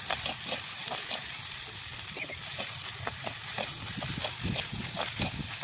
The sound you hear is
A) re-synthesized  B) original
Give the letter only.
B